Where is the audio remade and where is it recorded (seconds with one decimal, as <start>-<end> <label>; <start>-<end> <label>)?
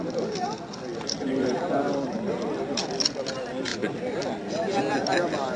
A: 0.0-0.9 recorded; 0.9-2.3 remade; 2.3-5.6 recorded